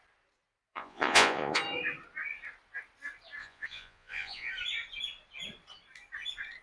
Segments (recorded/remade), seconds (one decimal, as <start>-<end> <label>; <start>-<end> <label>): 0.0-0.7 recorded; 0.7-1.6 remade; 1.6-3.4 recorded; 3.4-4.5 remade; 4.5-6.6 recorded